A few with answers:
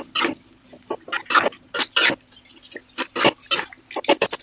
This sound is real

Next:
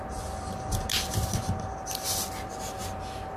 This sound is real